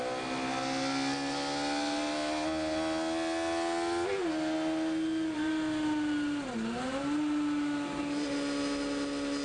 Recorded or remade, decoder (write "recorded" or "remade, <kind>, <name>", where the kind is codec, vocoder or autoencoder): recorded